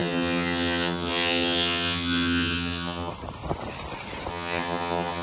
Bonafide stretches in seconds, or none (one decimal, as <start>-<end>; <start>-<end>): 3.1-4.3

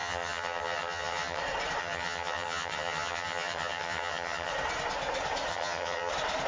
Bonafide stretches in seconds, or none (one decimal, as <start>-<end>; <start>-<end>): 1.4-1.8; 4.5-5.5; 6.1-6.5

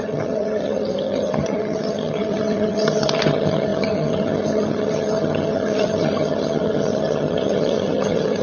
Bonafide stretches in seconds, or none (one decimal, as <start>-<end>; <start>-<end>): none

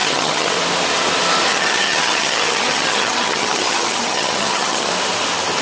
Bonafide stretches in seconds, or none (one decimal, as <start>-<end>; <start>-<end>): 0.5-1.5; 4.9-5.6

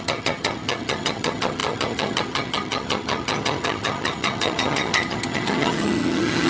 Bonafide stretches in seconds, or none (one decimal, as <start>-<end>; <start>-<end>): none